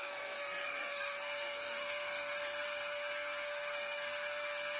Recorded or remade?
remade